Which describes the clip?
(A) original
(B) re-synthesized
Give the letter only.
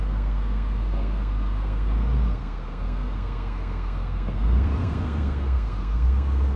B